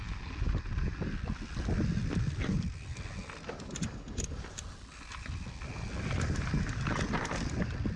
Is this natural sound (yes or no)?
yes